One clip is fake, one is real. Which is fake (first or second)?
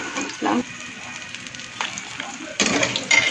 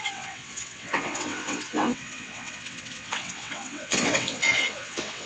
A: second